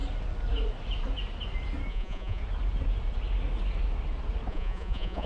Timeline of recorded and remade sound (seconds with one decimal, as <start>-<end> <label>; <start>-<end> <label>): 0.0-1.9 recorded; 1.9-2.4 remade; 2.4-4.5 recorded; 4.5-5.3 remade